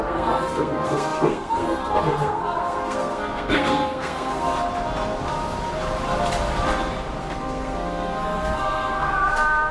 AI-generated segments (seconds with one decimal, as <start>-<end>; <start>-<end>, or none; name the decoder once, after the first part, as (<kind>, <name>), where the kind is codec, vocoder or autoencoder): 0.0-4.5 (codec, SNAC); 7.2-9.7